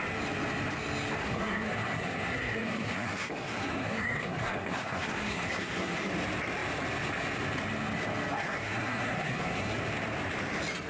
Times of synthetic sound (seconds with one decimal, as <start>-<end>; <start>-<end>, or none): 1.2-6.1; 8.4-9.8